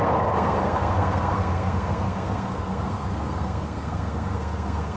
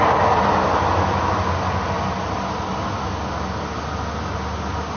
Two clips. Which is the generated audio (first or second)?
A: first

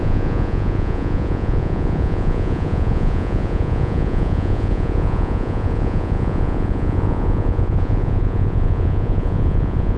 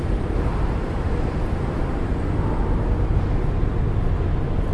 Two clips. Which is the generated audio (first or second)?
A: first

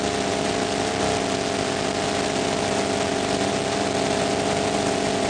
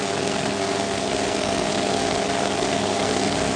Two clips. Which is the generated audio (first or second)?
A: second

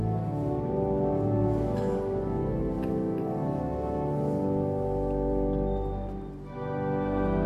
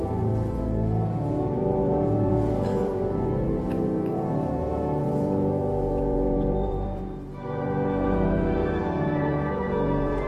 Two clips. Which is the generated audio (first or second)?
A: second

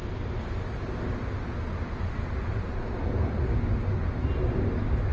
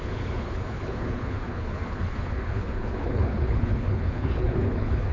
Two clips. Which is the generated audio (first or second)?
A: second